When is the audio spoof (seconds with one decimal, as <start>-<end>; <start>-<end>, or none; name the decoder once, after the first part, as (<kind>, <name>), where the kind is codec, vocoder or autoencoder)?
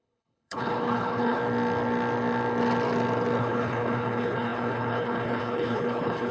0.0-1.4 (codec, HILCodec); 3.4-6.3